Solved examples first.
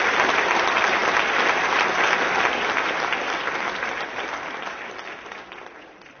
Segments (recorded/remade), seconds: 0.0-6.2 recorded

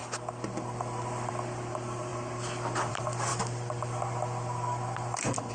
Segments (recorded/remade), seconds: 0.0-5.5 recorded

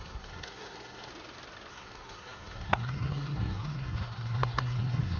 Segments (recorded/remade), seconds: 0.0-1.1 remade; 1.1-1.7 recorded; 1.7-5.2 remade

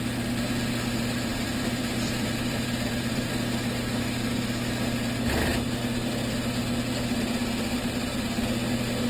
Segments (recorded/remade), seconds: 0.0-1.3 recorded; 1.3-3.3 remade; 3.3-9.1 recorded